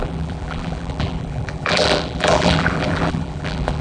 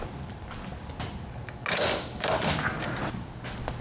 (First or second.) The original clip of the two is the second